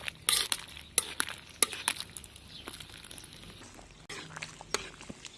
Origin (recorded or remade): recorded